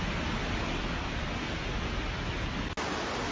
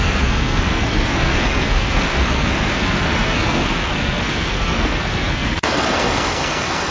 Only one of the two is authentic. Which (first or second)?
first